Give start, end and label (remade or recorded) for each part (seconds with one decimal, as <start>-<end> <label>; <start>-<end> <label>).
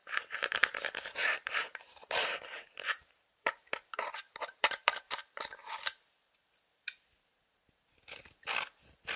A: 0.0-5.6 remade; 5.6-9.2 recorded